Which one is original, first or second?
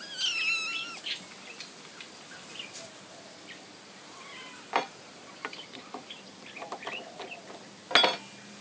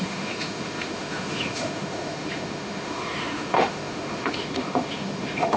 first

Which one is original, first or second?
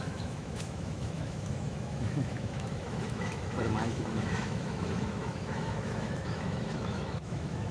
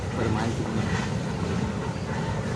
second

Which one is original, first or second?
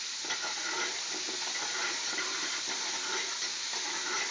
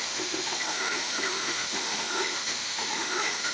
first